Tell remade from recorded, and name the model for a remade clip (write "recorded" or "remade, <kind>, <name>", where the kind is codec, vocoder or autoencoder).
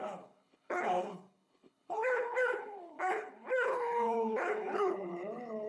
remade, codec, HILCodec